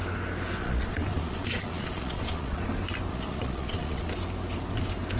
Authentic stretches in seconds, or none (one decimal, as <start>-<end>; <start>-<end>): 0.0-0.6; 2.6-3.1; 4.1-5.2